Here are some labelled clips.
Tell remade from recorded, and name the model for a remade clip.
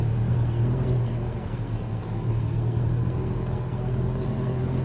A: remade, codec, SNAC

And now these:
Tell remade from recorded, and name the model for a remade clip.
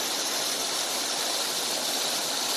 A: recorded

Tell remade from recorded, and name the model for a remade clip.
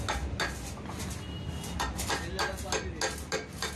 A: recorded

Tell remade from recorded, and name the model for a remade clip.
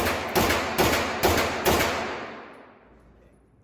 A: recorded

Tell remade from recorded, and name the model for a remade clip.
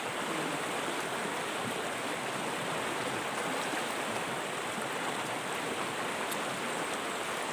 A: recorded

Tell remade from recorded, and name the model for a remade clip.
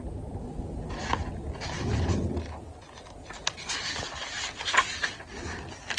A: recorded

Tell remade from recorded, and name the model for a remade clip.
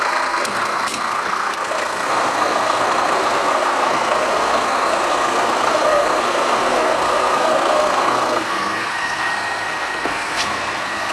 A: remade, codec, SNAC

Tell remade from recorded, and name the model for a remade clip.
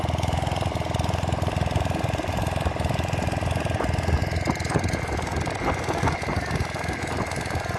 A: recorded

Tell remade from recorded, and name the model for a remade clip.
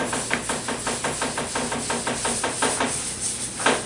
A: recorded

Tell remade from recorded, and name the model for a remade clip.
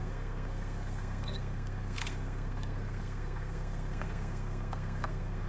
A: remade, codec, SNAC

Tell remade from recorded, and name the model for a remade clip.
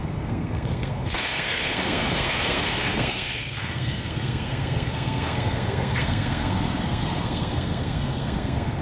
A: remade, codec, SNAC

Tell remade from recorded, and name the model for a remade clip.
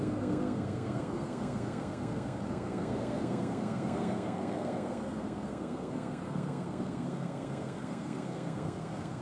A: remade, codec, SNAC